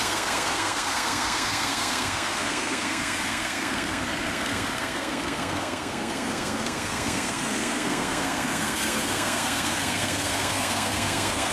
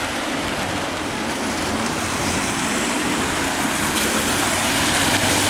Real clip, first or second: second